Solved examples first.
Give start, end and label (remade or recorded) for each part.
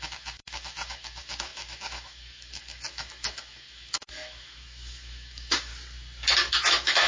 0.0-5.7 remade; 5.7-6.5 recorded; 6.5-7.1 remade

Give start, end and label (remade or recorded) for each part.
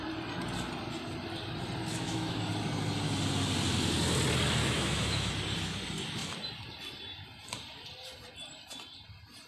0.0-1.9 recorded; 1.9-2.5 remade; 2.5-4.6 recorded; 4.6-5.3 remade; 5.3-9.5 recorded